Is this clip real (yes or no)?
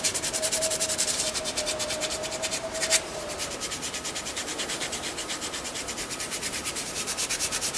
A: no